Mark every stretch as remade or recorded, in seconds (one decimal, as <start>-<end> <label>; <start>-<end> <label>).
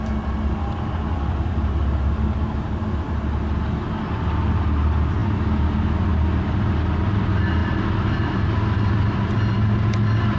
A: 0.0-10.4 recorded